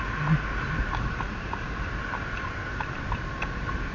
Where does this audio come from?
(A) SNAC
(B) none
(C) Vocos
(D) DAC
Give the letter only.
B